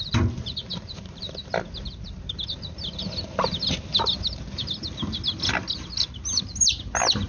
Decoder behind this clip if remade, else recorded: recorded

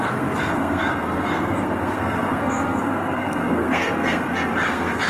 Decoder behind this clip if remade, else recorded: remade, codec, SNAC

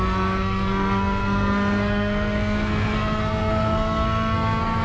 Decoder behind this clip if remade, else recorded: remade, codec, SNAC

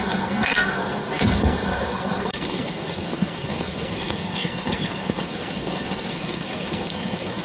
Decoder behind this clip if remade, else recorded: remade, codec, SNAC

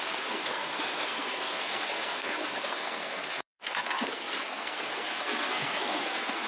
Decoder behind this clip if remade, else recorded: remade, codec, SNAC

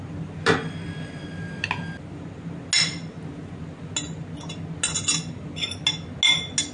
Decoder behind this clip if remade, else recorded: recorded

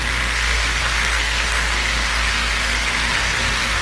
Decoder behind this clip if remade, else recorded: remade, codec, SNAC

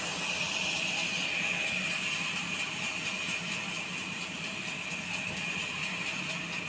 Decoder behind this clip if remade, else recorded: recorded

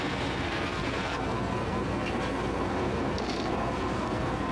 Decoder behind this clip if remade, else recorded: remade, codec, SNAC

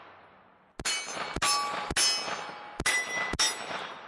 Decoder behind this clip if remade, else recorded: recorded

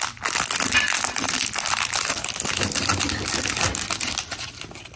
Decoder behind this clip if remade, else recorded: recorded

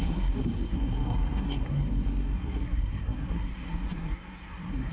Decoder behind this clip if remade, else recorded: remade, codec, SNAC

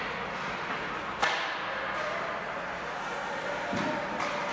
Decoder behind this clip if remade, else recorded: recorded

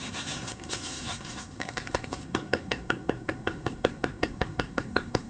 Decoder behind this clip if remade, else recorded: remade, codec, SNAC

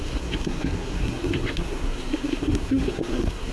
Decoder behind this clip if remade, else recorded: remade, codec, SNAC